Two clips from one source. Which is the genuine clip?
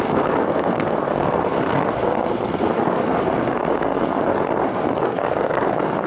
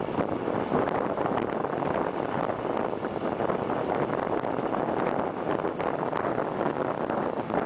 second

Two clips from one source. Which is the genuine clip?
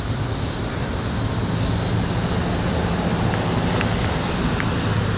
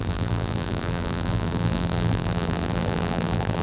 first